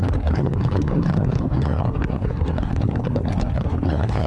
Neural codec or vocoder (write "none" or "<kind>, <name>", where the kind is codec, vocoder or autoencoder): codec, SNAC